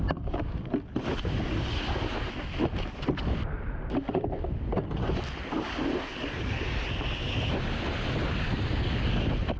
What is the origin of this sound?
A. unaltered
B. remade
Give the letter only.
A